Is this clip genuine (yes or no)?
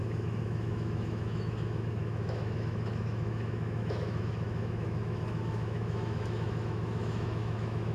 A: no